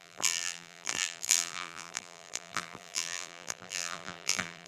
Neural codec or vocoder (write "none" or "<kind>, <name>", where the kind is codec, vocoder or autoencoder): vocoder, BigVGAN v2